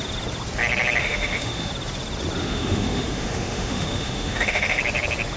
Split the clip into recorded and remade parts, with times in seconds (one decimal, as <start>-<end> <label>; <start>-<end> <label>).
0.0-1.0 recorded; 1.0-1.7 remade; 1.7-2.4 recorded; 2.4-4.8 remade; 4.8-5.4 recorded